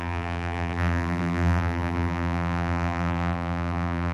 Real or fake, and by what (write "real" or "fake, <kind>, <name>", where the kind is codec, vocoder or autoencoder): fake, vocoder, BigVGAN v2